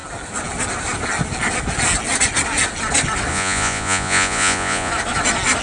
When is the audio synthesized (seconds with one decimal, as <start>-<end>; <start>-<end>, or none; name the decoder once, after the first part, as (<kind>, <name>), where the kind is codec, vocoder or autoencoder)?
3.3-4.9 (vocoder, Vocos)